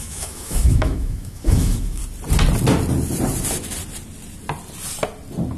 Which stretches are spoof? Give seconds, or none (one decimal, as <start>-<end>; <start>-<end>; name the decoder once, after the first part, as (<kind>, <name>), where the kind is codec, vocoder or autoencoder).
0.0-2.0 (autoencoder, DAC-VAE)